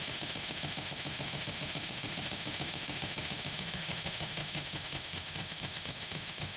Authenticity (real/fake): fake